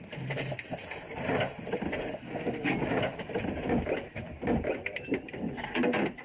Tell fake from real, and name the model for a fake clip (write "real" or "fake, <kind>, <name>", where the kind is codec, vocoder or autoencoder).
real